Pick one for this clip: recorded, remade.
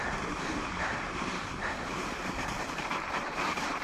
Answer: remade